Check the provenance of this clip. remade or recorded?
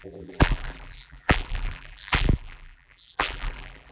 remade